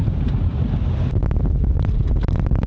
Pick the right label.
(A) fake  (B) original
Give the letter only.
A